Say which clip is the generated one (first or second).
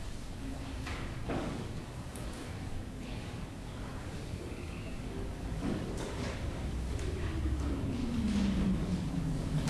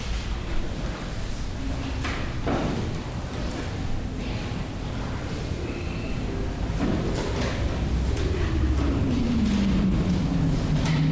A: first